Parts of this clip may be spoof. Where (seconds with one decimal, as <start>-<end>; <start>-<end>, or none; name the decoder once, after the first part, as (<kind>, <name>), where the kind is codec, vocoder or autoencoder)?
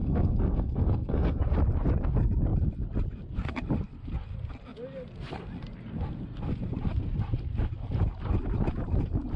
0.0-1.4 (codec, SNAC)